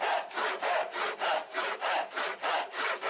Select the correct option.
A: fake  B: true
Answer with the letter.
B